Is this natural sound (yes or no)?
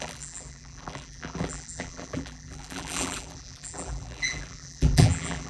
no